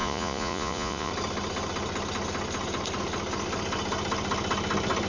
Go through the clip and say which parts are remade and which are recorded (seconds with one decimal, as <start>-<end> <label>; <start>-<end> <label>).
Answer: 0.0-1.1 remade; 1.1-5.1 recorded